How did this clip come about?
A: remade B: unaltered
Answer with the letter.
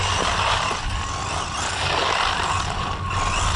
B